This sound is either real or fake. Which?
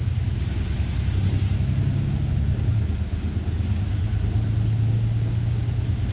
real